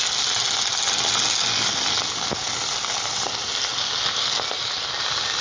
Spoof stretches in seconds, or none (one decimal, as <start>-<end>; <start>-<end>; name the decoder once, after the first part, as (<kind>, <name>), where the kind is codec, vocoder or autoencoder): none